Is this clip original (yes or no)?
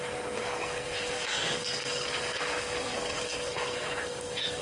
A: no